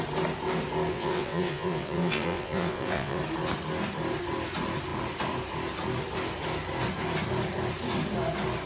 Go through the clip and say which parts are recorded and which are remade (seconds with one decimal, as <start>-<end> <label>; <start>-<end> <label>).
0.0-0.9 recorded; 0.9-3.2 remade; 3.2-8.7 recorded